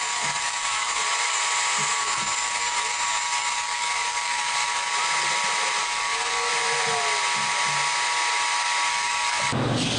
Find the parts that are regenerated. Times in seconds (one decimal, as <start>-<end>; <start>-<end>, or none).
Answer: 0.0-1.0; 2.0-4.9; 5.8-6.5; 8.9-10.0